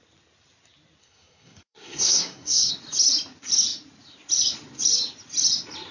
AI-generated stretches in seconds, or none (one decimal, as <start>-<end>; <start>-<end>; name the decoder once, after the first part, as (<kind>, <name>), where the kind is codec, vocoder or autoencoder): 1.0-2.7 (codec, SNAC)